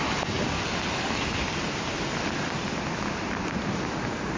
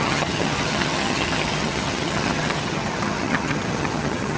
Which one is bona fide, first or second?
first